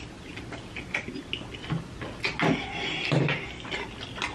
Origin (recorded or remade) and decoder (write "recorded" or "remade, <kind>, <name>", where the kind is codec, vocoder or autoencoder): recorded